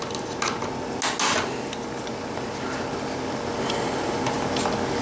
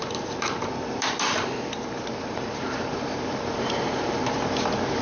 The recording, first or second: first